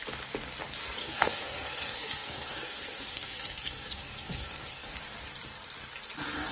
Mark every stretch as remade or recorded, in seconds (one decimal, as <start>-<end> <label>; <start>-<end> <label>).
0.0-1.0 recorded; 1.0-4.9 remade; 4.9-6.5 recorded